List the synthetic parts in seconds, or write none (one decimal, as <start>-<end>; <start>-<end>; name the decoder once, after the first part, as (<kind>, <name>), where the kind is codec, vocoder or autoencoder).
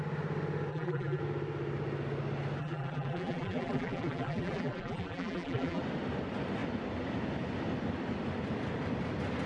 0.7-1.2 (vocoder, BigVGAN v2); 2.6-5.8